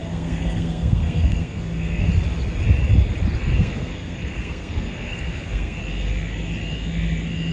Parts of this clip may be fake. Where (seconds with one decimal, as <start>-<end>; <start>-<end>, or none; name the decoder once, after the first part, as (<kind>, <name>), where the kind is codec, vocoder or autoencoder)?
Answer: 0.0-2.1 (codec, SNAC); 3.4-5.8